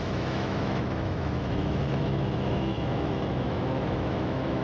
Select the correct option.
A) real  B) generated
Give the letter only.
B